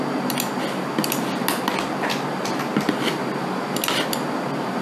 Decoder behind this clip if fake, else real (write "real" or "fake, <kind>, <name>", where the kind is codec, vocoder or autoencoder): real